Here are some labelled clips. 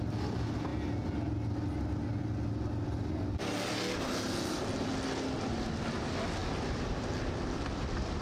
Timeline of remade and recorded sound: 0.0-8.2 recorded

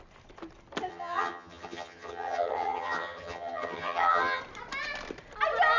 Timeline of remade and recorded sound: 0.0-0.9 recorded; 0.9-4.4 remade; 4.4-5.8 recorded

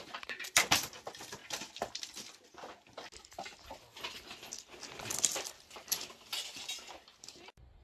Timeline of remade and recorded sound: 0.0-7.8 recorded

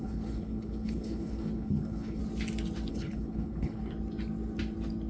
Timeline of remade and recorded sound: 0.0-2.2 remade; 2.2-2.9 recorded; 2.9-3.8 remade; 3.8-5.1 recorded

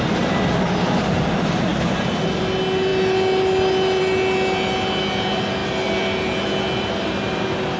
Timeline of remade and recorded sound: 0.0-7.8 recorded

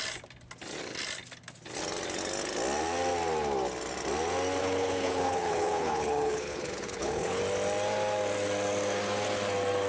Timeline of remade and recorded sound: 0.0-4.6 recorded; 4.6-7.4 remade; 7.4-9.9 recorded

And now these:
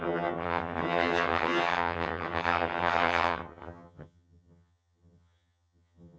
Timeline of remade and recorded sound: 0.0-6.2 remade